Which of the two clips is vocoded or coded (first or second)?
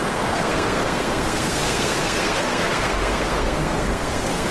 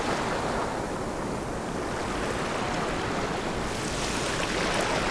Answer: first